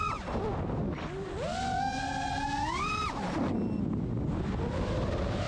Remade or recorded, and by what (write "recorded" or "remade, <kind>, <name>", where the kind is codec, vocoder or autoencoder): recorded